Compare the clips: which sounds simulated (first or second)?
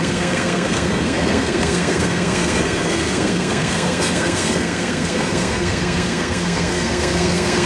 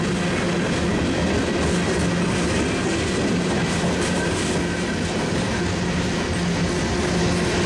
first